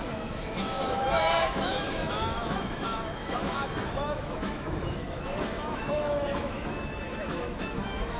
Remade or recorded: remade